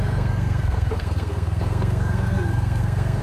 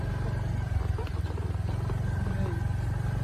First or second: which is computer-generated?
first